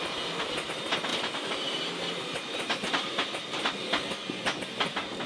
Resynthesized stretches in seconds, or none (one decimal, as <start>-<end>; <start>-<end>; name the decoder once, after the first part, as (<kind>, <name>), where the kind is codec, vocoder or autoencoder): 1.1-3.6 (vocoder, BigVGAN v2)